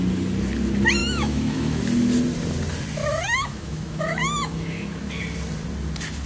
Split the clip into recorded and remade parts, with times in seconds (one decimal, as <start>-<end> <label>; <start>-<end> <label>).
0.0-1.0 recorded; 1.0-1.8 remade; 1.8-3.0 recorded; 3.0-5.1 remade; 5.1-6.3 recorded